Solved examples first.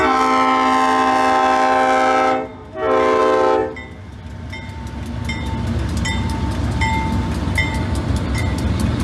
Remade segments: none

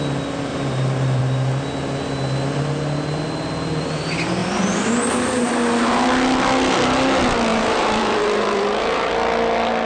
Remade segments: 0.5-1.2 (vocoder, BigVGAN v2); 4.4-5.5; 7.5-9.1

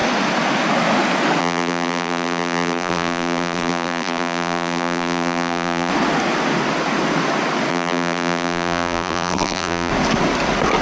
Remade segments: 1.4-5.9 (vocoder, BigVGAN v2); 7.7-9.9